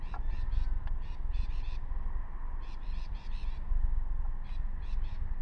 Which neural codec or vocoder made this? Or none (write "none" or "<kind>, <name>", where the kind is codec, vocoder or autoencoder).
none